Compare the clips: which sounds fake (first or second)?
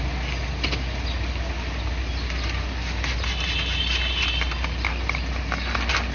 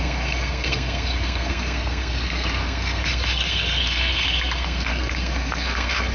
second